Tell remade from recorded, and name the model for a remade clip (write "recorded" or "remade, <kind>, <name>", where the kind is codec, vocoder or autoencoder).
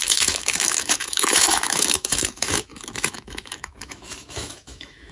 remade, autoencoder, DAC-VAE